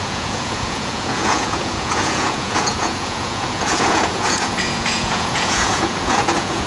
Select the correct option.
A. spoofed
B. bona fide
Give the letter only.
A